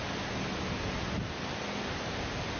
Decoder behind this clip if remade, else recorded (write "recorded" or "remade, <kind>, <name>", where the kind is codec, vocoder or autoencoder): recorded